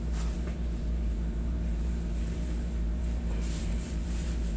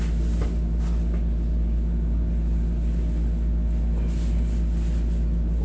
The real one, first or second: second